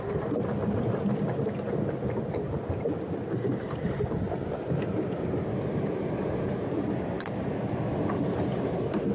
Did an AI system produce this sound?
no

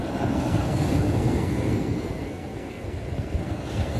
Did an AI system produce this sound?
yes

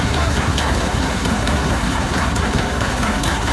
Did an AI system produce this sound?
yes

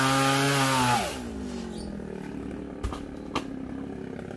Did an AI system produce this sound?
no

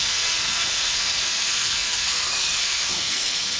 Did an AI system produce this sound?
yes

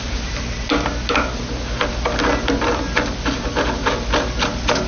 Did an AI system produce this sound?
no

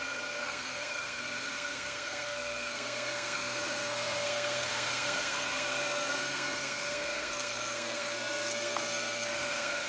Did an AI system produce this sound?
yes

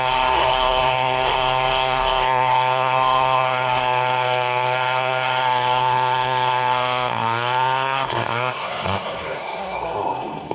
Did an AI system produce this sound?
yes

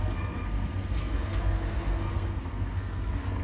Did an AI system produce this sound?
yes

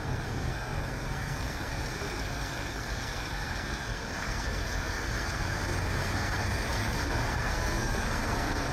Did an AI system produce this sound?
yes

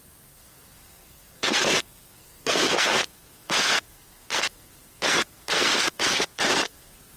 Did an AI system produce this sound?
yes